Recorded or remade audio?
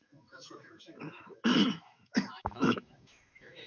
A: remade